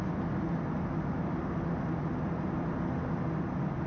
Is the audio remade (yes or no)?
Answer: no